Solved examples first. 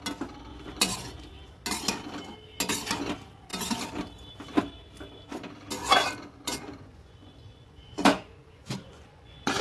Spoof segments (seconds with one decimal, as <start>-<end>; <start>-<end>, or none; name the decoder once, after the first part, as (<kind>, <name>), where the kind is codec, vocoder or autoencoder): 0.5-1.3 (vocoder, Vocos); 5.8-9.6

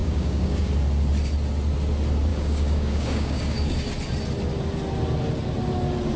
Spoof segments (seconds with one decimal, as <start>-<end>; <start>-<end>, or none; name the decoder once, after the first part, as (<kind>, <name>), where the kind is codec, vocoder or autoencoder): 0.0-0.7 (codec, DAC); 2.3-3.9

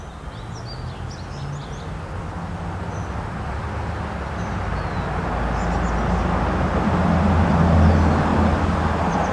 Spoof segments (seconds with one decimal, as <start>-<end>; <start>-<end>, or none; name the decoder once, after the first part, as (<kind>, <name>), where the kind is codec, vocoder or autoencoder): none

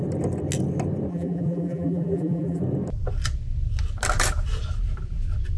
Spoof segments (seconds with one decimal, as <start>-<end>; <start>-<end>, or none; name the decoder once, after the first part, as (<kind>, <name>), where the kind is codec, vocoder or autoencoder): 1.1-2.6 (vocoder, BigVGAN v2)

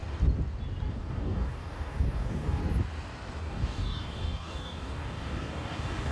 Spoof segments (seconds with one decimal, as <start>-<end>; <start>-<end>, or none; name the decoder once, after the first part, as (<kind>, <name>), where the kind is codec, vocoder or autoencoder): 0.9-2.6 (codec, DAC); 3.4-6.1

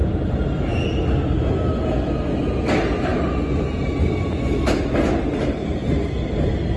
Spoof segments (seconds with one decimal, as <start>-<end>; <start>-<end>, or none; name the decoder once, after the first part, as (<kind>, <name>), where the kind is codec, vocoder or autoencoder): none